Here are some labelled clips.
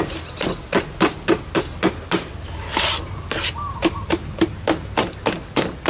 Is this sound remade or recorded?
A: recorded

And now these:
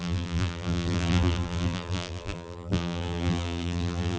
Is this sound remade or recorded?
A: remade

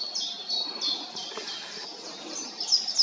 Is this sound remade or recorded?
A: recorded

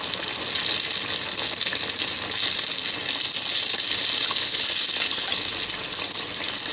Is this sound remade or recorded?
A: recorded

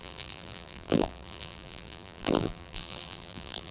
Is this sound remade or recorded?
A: remade